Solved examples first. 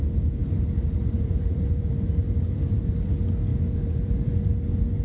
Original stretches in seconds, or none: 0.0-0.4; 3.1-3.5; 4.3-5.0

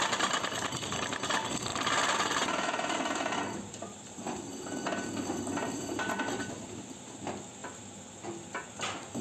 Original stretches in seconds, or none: 0.0-1.7; 3.3-9.2

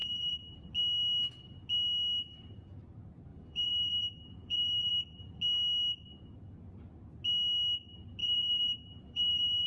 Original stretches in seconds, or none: 0.7-3.3; 5.4-8.2